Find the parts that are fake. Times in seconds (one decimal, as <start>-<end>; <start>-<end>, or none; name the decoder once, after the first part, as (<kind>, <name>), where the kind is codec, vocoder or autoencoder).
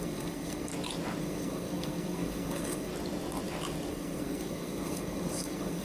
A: 0.0-0.7 (codec, SNAC); 1.2-2.9; 3.9-5.8